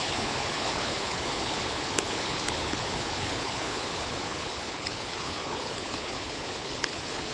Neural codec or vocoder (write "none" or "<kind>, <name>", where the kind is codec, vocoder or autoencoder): codec, HILCodec